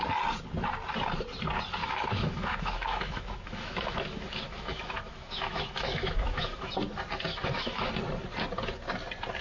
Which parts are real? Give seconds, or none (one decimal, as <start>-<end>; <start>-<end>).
0.0-1.8; 6.7-7.3; 7.9-9.4